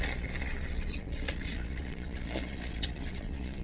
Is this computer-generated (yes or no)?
yes